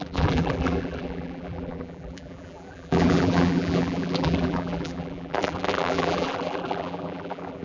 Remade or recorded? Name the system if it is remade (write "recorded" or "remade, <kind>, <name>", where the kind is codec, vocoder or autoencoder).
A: remade, vocoder, BigVGAN v2